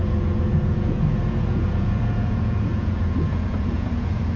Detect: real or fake fake